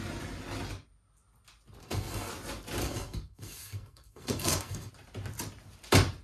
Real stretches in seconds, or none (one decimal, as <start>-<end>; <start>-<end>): 0.0-1.8; 2.3-2.8; 4.9-6.2